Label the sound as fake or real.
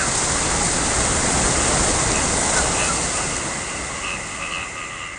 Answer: real